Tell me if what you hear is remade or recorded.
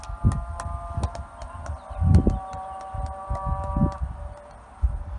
recorded